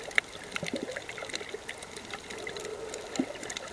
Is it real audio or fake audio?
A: real